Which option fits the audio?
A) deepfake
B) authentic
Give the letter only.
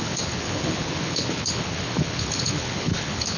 A